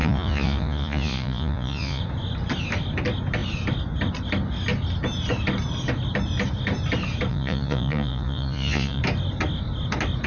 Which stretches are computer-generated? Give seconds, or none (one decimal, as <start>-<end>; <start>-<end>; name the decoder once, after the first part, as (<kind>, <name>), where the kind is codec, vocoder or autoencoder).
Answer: 0.0-2.0 (vocoder, Vocos); 7.3-9.0